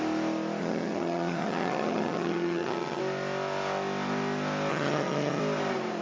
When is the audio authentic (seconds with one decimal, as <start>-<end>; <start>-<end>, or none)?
0.0-0.6; 3.0-4.7; 5.4-6.0